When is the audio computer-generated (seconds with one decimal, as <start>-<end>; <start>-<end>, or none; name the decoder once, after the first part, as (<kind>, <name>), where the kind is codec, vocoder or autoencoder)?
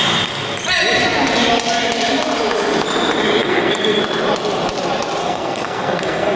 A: 3.4-4.0 (codec, SNAC); 5.2-6.4